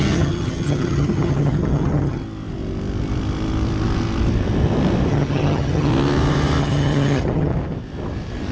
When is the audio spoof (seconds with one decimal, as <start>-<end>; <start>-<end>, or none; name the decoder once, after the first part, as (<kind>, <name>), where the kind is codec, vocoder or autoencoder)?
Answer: 0.0-2.2 (vocoder, HiFi-GAN); 5.1-5.9; 6.6-7.5